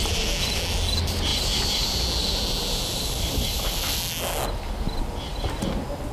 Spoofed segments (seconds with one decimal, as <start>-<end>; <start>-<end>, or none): 0.0-0.6; 1.3-4.0; 5.3-6.1